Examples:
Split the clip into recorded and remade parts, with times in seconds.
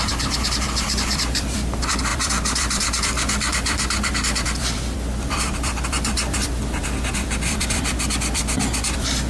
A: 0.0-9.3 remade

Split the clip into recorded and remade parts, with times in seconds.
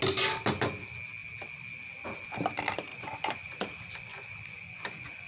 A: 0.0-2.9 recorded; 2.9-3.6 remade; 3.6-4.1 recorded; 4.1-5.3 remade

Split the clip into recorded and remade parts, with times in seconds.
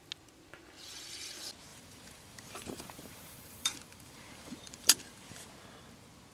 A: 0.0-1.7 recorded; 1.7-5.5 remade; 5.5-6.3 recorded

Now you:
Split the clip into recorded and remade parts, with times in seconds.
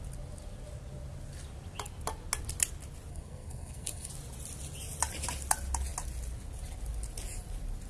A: 0.0-3.1 recorded; 3.1-4.1 remade; 4.1-7.9 recorded